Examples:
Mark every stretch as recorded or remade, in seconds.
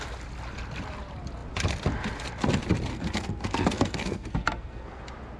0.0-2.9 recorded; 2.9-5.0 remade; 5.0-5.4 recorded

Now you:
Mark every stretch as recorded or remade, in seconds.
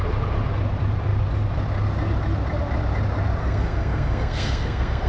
0.0-3.4 recorded; 3.4-5.1 remade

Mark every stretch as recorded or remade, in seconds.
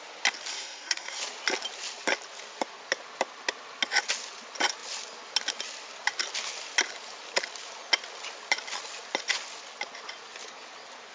0.0-0.5 recorded; 0.5-1.2 remade; 1.2-11.1 recorded